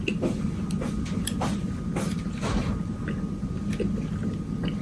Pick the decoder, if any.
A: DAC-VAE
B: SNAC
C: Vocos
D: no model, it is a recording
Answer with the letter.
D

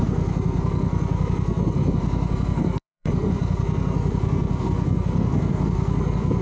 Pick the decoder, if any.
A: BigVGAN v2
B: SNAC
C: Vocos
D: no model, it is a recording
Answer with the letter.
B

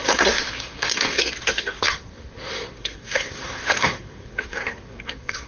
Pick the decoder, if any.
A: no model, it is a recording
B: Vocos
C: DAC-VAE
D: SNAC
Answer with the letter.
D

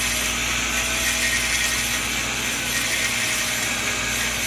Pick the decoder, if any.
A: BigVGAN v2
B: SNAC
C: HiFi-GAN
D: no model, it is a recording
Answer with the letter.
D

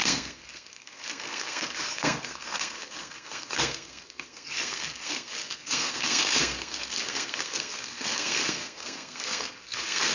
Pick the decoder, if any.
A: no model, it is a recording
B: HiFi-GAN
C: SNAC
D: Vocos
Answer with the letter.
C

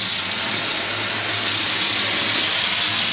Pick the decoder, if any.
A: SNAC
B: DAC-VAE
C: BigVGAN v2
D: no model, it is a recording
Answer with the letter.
D